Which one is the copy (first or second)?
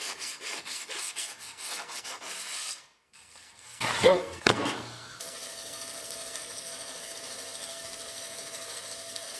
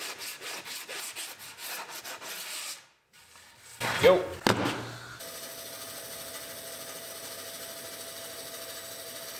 first